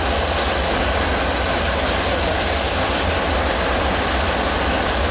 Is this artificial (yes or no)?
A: no